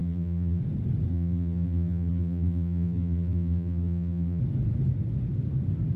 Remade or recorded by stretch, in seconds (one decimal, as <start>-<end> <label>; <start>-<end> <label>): 0.0-0.6 remade; 0.6-1.1 recorded; 1.1-4.4 remade; 4.4-6.0 recorded